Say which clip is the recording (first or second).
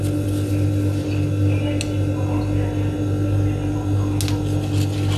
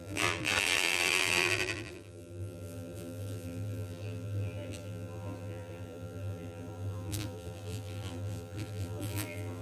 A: first